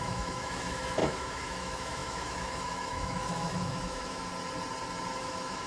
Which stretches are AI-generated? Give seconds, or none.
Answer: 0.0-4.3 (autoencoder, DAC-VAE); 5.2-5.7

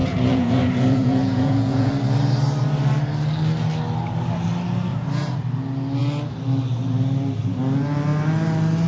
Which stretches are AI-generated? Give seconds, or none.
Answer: 0.0-1.9 (vocoder, Vocos); 4.9-5.4

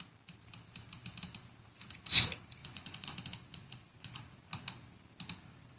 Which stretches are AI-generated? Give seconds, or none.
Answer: 2.6-3.1 (vocoder, Vocos); 3.5-4.2

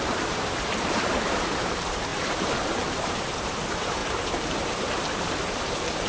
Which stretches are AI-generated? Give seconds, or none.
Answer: 0.0-6.1 (vocoder, BigVGAN v2)

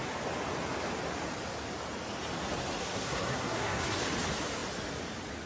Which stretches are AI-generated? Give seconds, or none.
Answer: 2.8-4.0 (codec, SNAC)